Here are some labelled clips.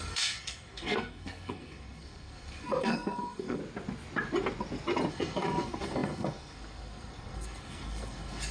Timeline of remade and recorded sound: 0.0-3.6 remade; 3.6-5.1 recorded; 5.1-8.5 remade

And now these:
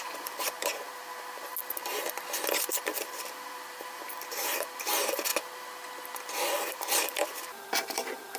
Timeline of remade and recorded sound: 0.0-1.5 remade; 1.5-2.7 recorded; 2.7-5.3 remade; 5.3-6.7 recorded; 6.7-8.4 remade

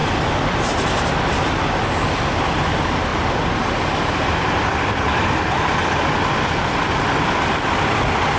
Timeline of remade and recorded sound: 0.0-8.4 recorded

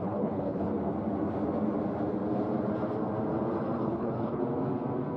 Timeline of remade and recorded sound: 0.0-0.7 remade; 0.7-3.8 recorded; 3.8-4.4 remade; 4.4-5.2 recorded

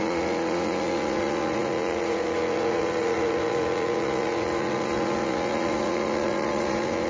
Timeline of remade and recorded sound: 0.0-7.1 remade

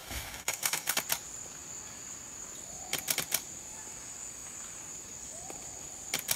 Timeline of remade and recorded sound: 0.0-1.0 remade; 1.0-6.4 recorded